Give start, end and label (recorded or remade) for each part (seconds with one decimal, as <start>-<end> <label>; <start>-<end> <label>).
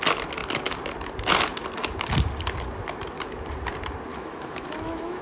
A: 0.0-4.1 recorded; 4.1-5.2 remade